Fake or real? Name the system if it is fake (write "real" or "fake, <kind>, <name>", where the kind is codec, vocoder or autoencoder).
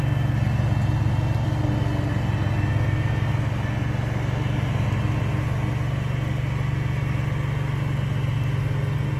real